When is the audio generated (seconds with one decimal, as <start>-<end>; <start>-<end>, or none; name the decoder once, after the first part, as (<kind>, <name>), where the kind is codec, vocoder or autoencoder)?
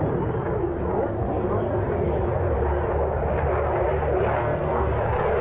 4.4-4.9 (codec, SNAC)